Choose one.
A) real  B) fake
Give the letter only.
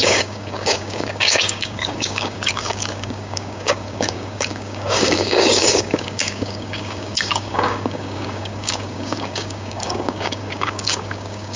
B